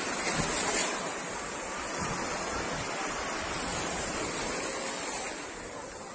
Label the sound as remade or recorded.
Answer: recorded